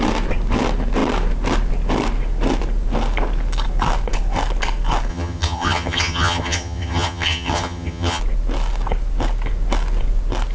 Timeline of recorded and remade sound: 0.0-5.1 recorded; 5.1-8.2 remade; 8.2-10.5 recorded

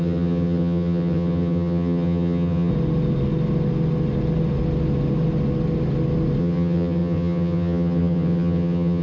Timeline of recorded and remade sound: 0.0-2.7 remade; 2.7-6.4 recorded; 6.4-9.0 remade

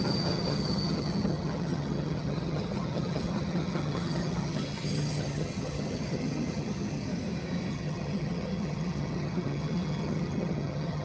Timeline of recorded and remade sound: 0.0-7.1 remade; 7.1-7.7 recorded; 7.7-11.0 remade